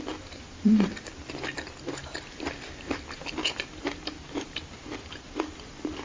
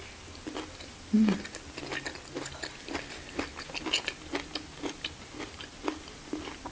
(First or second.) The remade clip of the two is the first